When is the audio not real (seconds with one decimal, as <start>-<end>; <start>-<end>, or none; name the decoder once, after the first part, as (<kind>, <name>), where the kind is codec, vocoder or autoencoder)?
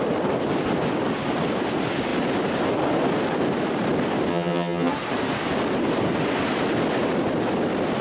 4.3-4.9 (vocoder, HiFi-GAN)